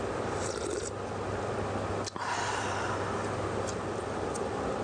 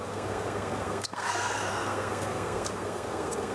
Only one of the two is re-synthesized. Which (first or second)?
second